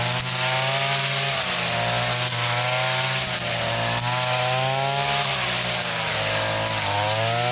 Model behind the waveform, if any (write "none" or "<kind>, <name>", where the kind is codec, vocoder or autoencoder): none